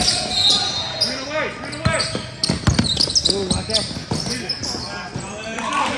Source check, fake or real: real